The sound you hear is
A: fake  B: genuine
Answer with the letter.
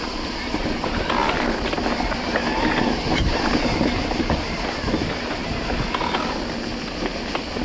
B